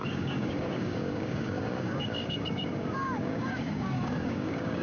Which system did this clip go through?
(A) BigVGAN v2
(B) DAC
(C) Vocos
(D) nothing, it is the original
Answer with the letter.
B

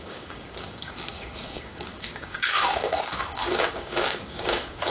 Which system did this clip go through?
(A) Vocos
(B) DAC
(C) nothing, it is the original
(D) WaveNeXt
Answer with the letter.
B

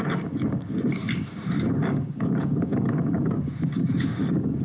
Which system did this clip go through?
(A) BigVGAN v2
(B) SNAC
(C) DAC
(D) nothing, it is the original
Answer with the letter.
C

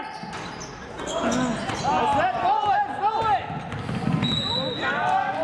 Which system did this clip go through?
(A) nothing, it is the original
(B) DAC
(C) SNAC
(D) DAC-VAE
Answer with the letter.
A